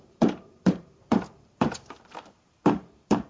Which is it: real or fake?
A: fake